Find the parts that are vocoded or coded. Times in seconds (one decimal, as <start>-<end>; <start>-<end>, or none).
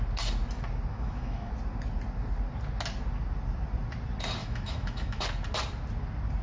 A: 0.9-1.5; 4.4-5.2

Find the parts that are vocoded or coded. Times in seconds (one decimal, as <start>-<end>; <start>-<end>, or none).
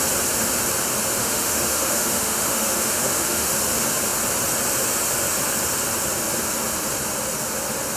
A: 1.2-3.5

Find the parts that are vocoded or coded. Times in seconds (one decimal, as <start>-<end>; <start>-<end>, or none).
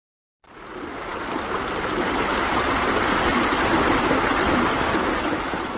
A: none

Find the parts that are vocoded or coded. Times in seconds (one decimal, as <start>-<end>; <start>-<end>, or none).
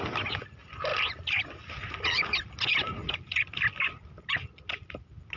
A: 0.9-4.1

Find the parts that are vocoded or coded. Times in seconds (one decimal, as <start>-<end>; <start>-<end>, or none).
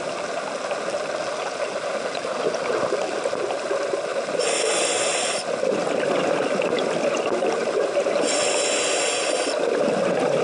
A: 4.1-8.0